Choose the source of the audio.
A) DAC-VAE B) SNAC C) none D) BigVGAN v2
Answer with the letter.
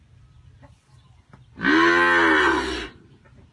C